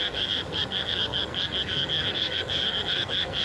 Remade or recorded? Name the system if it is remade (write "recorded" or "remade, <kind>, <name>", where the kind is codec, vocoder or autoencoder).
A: remade, codec, SNAC